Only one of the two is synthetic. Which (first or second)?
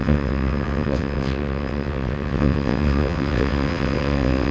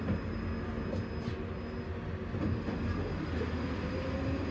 first